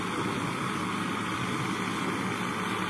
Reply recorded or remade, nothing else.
recorded